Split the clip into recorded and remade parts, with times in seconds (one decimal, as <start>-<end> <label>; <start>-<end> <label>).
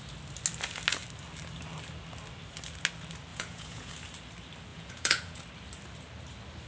0.0-3.3 recorded; 3.3-3.9 remade; 3.9-4.7 recorded; 4.7-5.4 remade; 5.4-6.7 recorded